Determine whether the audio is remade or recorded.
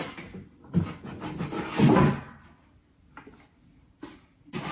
recorded